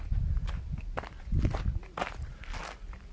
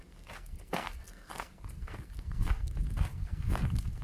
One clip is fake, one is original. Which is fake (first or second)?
second